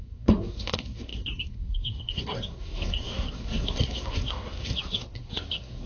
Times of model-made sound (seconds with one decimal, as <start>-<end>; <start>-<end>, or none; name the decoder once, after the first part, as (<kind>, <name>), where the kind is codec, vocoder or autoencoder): 0.0-5.9 (codec, SNAC)